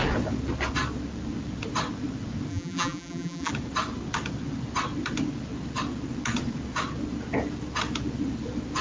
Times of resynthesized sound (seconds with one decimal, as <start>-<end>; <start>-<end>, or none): 2.5-3.5